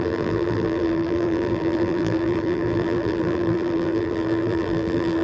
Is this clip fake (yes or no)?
yes